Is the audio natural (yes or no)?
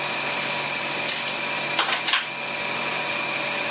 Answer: yes